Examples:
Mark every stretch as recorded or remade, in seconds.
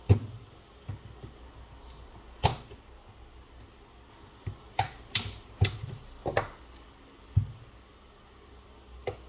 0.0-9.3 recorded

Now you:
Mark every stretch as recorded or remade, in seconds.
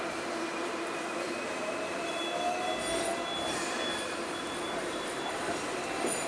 0.0-2.2 remade; 2.2-4.2 recorded; 4.2-6.3 remade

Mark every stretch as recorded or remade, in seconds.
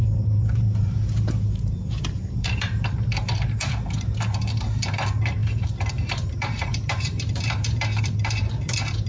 0.0-9.1 remade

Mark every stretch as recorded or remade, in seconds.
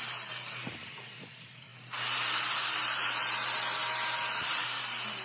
0.0-5.2 recorded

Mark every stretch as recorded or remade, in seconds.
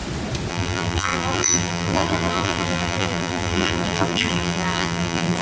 0.0-0.5 recorded; 0.5-5.4 remade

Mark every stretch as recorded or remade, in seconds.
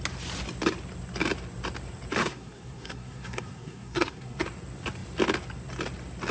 0.0-2.2 recorded; 2.2-4.4 remade; 4.4-6.3 recorded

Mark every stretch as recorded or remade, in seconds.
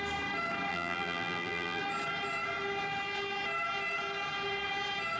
0.0-0.7 recorded; 0.7-1.8 remade; 1.8-5.2 recorded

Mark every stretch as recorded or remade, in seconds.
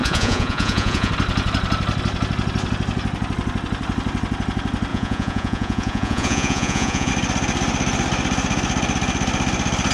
0.0-1.1 remade; 1.1-4.9 recorded; 4.9-7.1 remade; 7.1-9.9 recorded